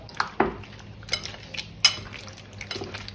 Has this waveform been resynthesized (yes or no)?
no